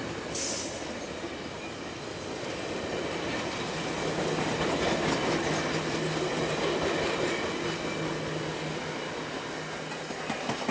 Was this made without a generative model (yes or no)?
yes